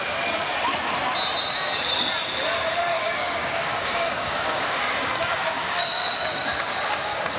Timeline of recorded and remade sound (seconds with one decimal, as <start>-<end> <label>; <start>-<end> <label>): 0.0-2.9 recorded; 2.9-7.4 remade